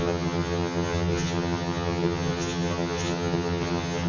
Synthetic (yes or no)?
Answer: yes